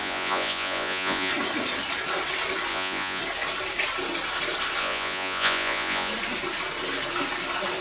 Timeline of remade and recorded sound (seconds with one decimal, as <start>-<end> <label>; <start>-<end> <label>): 0.0-1.3 remade; 1.3-2.7 recorded; 2.7-3.2 remade; 3.2-4.8 recorded; 4.8-6.1 remade; 6.1-7.8 recorded